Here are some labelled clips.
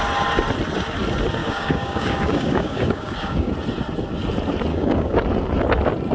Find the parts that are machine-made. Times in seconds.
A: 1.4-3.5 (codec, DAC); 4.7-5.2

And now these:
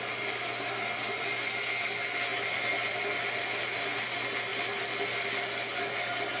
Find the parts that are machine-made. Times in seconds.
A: none

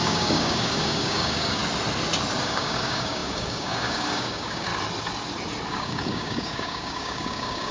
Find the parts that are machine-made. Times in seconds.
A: 0.0-1.6 (codec, DAC); 2.4-4.7; 5.7-7.7

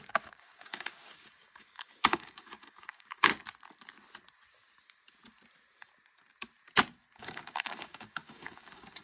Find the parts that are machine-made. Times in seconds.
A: 0.0-3.3 (codec, DAC); 7.2-9.0